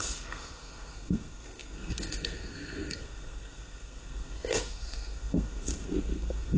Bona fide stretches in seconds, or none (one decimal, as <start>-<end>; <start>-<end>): none

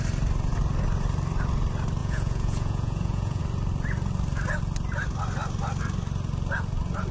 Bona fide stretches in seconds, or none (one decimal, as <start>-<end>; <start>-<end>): 0.0-2.0; 3.4-7.1

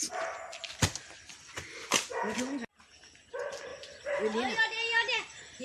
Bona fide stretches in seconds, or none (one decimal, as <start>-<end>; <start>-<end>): 0.0-3.7

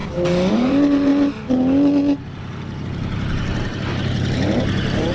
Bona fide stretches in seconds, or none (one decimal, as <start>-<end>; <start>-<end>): 0.0-0.5; 1.1-2.8

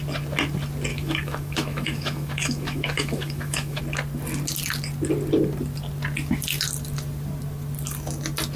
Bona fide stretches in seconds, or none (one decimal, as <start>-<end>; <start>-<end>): 0.0-0.9; 3.8-8.6